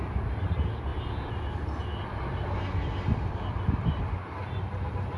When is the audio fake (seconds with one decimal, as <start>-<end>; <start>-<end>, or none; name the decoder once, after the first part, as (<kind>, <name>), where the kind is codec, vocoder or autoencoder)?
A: none